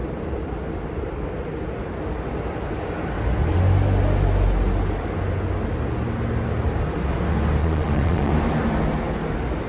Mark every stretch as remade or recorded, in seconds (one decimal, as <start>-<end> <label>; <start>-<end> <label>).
0.0-7.6 recorded; 7.6-8.3 remade; 8.3-9.7 recorded

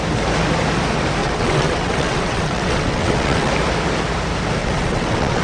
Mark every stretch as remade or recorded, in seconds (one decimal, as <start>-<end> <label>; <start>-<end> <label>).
0.0-1.2 recorded; 1.2-3.5 remade; 3.5-4.6 recorded; 4.6-5.4 remade

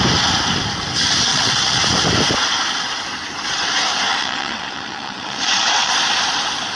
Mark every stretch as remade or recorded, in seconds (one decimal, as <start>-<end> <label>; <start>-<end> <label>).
0.0-1.3 recorded; 1.3-1.8 remade; 1.8-4.1 recorded; 4.1-5.9 remade; 5.9-6.8 recorded

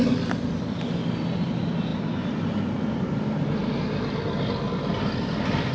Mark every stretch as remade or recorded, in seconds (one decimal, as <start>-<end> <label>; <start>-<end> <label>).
0.0-5.7 recorded

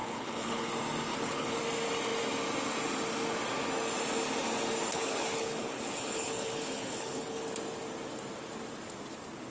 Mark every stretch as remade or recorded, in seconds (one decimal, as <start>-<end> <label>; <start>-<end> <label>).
0.0-0.7 remade; 0.7-1.1 recorded; 1.1-1.6 remade; 1.6-4.9 recorded; 4.9-7.4 remade; 7.4-9.5 recorded